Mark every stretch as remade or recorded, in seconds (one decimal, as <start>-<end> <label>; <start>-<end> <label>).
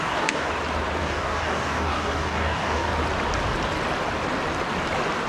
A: 0.0-0.5 remade; 0.5-1.0 recorded; 1.0-2.9 remade; 2.9-5.3 recorded